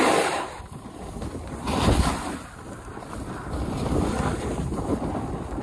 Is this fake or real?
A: real